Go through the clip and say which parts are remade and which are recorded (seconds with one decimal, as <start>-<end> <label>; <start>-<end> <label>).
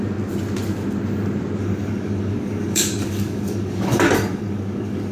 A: 0.0-1.6 recorded; 1.6-5.1 remade